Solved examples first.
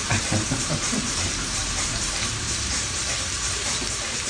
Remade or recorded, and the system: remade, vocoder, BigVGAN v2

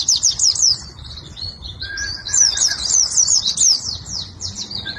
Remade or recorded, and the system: remade, vocoder, Vocos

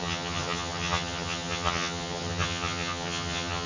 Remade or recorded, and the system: remade, vocoder, HiFi-GAN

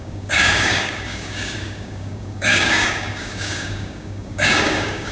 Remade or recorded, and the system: remade, codec, DAC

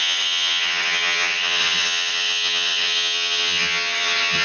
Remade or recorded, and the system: remade, vocoder, HiFi-GAN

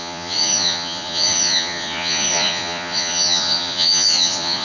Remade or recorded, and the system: remade, vocoder, Vocos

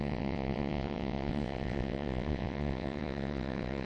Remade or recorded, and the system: remade, vocoder, WaveNeXt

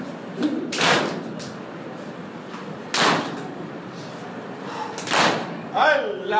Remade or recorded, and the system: recorded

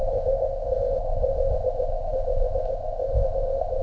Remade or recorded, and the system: remade, codec, ZipCodec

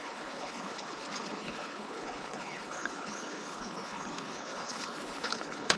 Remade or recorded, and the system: remade, codec, HILCodec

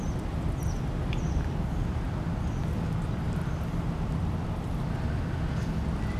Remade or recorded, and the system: recorded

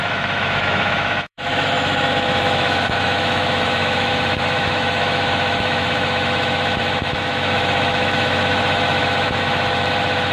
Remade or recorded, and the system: remade, autoencoder, DAC-VAE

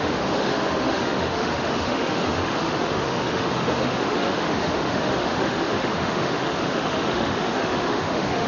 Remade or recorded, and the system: remade, autoencoder, DAC-VAE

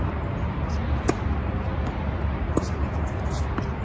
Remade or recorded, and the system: recorded